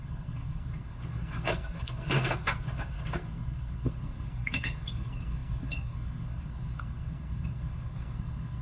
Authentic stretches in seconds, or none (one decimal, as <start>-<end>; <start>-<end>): none